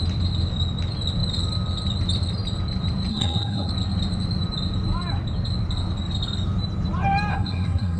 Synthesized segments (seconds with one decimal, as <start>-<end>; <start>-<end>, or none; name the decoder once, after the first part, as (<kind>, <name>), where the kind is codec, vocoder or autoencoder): 3.1-3.7 (codec, SNAC); 7.3-8.0